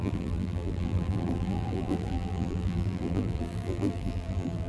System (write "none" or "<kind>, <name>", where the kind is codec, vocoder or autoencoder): vocoder, BigVGAN v2